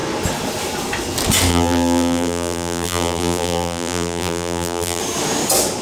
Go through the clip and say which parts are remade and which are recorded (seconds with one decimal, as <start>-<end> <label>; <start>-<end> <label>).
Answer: 0.0-1.5 recorded; 1.5-5.0 remade; 5.0-5.8 recorded